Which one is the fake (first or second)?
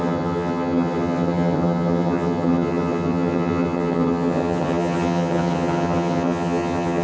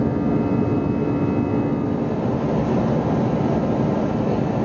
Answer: first